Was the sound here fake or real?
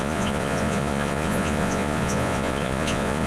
fake